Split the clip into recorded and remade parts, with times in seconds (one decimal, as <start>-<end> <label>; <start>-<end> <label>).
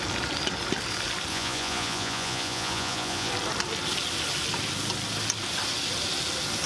0.0-1.3 recorded; 1.3-3.3 remade; 3.3-6.7 recorded